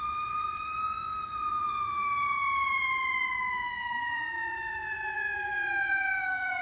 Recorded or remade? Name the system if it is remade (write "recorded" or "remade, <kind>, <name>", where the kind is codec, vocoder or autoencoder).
remade, vocoder, Vocos